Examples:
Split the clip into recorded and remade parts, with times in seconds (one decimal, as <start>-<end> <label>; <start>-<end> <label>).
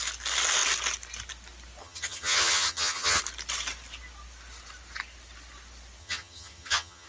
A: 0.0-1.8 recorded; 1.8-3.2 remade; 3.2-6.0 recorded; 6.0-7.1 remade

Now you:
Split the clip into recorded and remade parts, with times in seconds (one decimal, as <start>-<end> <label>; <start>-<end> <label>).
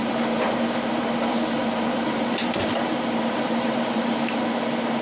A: 0.0-1.0 remade; 1.0-1.6 recorded; 1.6-4.4 remade; 4.4-5.0 recorded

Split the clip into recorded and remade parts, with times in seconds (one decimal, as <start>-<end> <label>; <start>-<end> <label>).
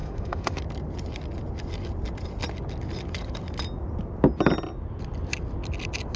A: 0.0-0.6 remade; 0.6-6.2 recorded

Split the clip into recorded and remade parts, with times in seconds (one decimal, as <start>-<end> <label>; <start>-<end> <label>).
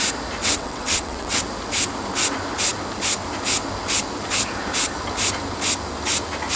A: 0.0-0.4 recorded; 0.4-1.4 remade; 1.4-6.6 recorded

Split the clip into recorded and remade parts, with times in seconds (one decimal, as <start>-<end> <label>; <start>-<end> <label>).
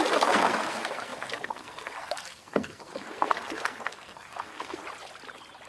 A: 0.0-4.8 remade; 4.8-5.7 recorded